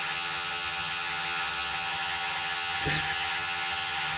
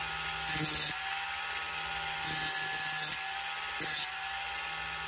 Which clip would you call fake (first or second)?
first